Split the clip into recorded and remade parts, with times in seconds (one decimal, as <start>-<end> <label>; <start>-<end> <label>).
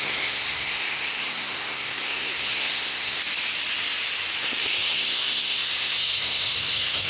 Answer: 0.0-3.2 remade; 3.2-4.4 recorded; 4.4-7.1 remade